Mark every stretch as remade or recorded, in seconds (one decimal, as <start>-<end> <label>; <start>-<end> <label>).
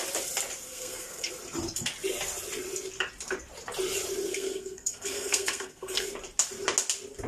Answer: 0.0-0.7 recorded; 0.7-1.3 remade; 1.3-4.3 recorded; 4.3-6.1 remade; 6.1-7.3 recorded